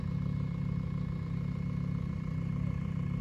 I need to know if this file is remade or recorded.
recorded